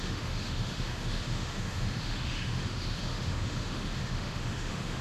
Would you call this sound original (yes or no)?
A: no